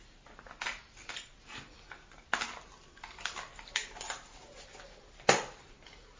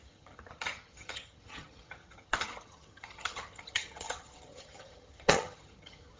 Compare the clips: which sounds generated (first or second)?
second